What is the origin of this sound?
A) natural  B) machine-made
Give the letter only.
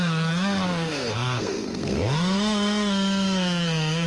B